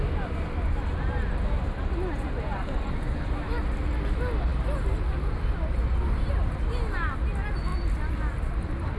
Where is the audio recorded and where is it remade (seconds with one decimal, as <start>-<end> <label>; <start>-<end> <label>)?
0.0-9.0 recorded

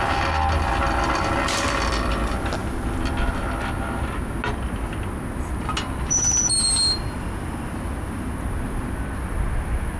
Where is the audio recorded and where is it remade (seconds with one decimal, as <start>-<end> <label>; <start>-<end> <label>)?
0.0-10.0 recorded

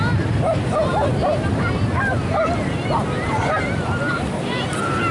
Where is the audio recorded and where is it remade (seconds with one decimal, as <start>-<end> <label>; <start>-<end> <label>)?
0.0-5.1 recorded

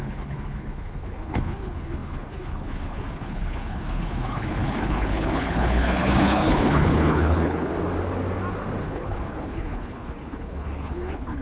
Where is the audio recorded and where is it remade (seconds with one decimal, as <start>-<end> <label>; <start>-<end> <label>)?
0.0-7.7 remade; 7.7-8.8 recorded; 8.8-11.4 remade

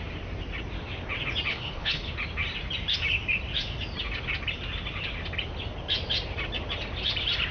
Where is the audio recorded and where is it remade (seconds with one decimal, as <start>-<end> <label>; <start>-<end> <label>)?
0.0-1.5 recorded; 1.5-2.1 remade; 2.1-7.5 recorded

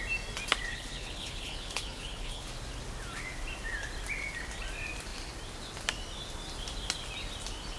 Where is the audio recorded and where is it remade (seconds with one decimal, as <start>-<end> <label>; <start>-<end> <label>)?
0.0-0.7 recorded; 0.7-2.5 remade; 2.5-7.8 recorded

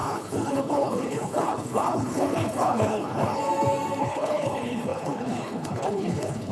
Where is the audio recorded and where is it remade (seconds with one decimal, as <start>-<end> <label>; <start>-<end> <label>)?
0.0-3.4 remade; 3.4-4.0 recorded; 4.0-6.5 remade

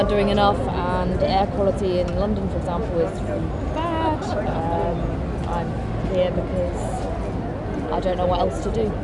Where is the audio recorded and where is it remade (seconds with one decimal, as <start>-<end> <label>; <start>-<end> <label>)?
0.0-9.0 recorded